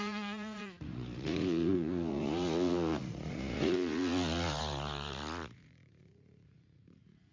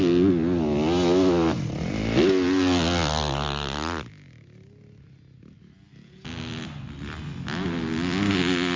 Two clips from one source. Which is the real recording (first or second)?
second